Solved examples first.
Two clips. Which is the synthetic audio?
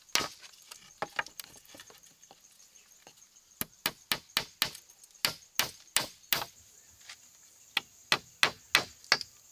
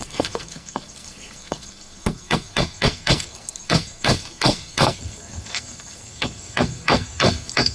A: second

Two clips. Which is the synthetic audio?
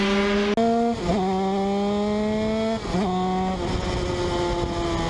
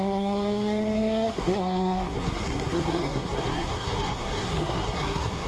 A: second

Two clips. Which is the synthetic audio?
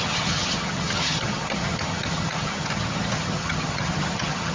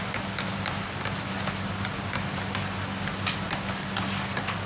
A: first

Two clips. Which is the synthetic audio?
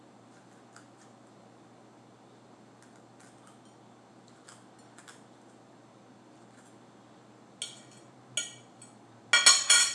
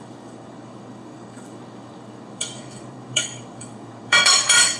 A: second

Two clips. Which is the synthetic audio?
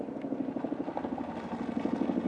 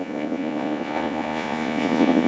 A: second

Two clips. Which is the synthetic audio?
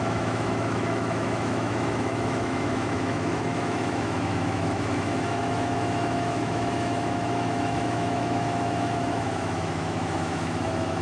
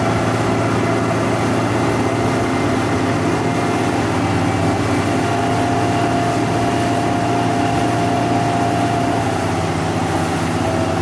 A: first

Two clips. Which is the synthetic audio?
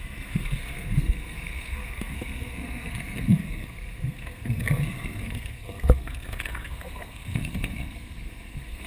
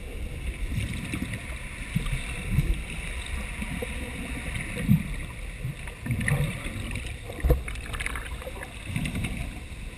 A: first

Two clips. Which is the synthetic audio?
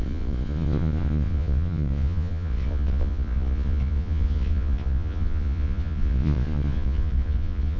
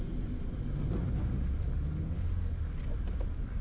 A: first